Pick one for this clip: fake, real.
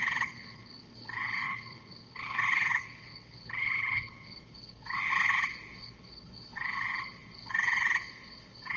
fake